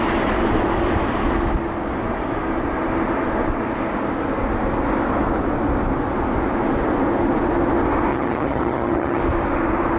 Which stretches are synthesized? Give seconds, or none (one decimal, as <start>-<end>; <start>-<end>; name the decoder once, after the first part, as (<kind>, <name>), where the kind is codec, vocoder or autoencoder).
8.1-9.2 (vocoder, HiFi-GAN)